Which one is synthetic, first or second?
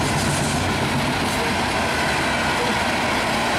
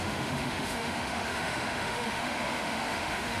second